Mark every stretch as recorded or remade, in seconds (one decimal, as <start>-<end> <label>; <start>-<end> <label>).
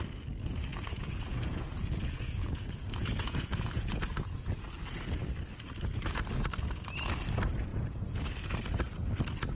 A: 0.0-0.7 recorded; 0.7-4.7 remade; 4.7-7.7 recorded; 7.7-8.3 remade; 8.3-9.5 recorded